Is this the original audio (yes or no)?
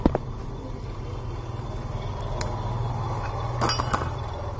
yes